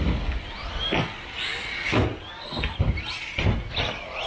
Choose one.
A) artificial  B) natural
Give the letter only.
B